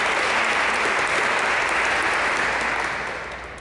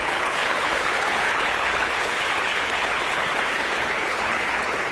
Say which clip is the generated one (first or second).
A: second